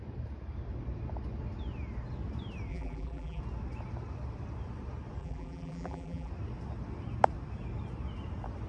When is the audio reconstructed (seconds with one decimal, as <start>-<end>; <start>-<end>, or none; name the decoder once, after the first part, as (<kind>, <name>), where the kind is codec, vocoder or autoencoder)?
2.7-3.4 (vocoder, BigVGAN v2); 5.2-6.3